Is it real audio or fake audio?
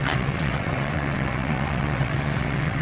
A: fake